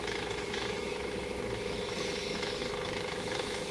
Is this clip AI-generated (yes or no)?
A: yes